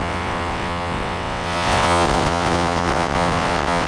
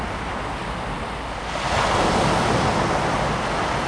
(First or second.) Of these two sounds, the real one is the second